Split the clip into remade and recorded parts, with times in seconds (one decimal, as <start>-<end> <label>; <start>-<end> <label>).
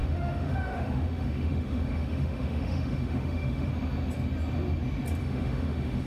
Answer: 0.0-3.7 remade; 3.7-5.2 recorded; 5.2-6.1 remade